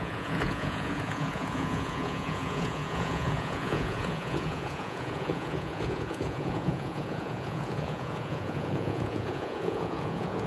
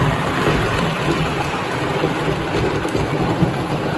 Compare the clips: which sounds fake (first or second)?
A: first